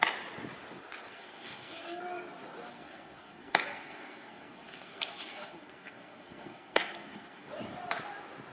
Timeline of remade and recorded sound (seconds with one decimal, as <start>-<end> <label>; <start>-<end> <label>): 0.0-1.1 recorded; 1.1-2.0 remade; 2.0-2.7 recorded; 2.7-7.5 remade; 7.5-8.5 recorded